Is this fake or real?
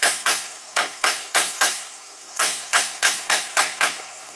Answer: fake